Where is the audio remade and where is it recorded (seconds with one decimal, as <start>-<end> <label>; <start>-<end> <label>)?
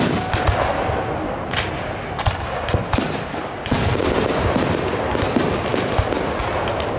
0.0-7.0 recorded